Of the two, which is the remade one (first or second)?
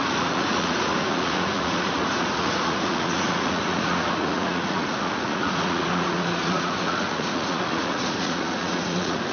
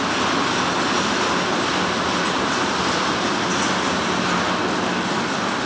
first